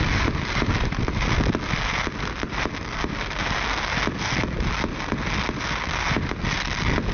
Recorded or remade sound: recorded